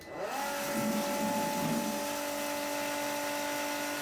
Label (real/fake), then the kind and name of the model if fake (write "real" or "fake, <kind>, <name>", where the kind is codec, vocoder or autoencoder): real